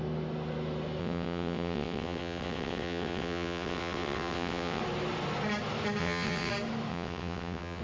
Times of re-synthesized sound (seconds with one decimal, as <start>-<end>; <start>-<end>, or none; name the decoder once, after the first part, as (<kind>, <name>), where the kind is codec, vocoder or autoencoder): 1.0-4.8 (vocoder, WaveNeXt); 6.0-6.5; 6.9-7.8